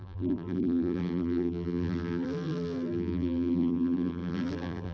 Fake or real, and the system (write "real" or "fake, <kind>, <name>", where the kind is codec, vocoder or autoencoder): fake, vocoder, BigVGAN v2